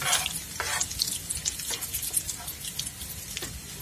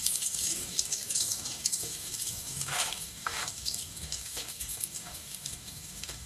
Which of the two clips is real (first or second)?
first